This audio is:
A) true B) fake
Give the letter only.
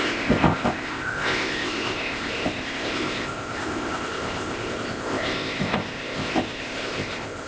B